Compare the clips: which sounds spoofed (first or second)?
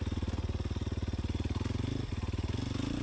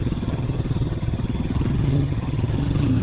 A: second